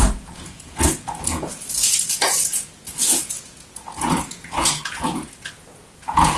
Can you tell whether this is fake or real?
fake